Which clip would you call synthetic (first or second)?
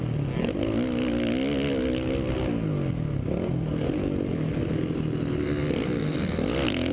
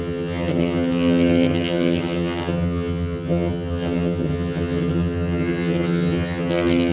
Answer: second